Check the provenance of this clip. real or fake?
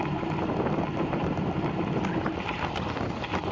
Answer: real